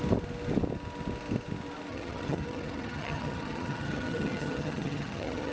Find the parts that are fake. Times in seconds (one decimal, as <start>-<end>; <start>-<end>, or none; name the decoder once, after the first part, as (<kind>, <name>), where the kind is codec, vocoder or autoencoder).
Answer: 1.9-5.5 (vocoder, HiFi-GAN)